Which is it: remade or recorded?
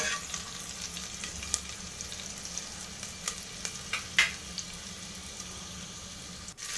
recorded